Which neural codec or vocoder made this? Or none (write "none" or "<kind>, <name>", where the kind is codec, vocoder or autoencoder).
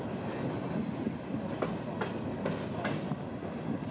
none